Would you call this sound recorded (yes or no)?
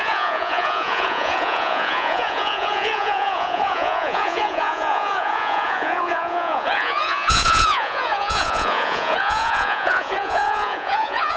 no